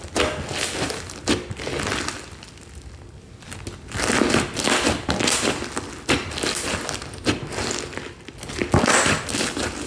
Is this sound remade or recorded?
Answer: recorded